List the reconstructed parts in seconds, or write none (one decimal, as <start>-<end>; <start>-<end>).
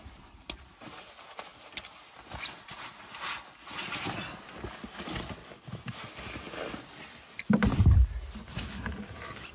none